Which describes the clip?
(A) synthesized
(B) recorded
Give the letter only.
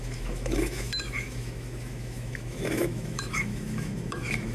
A